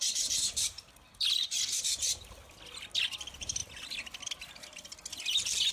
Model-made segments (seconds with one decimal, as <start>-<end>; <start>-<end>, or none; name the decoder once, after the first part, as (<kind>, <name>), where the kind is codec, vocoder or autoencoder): 0.0-3.6 (vocoder, BigVGAN v2)